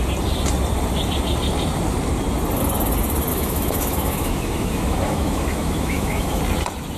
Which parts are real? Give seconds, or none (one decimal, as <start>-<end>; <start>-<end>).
0.0-3.3; 6.4-7.0